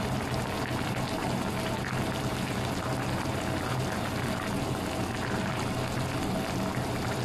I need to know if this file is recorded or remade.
recorded